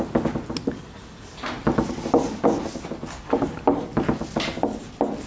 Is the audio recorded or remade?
recorded